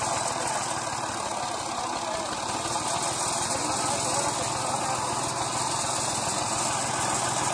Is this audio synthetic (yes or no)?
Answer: no